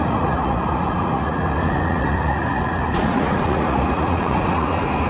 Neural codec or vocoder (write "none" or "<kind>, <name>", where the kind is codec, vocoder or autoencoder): vocoder, Vocos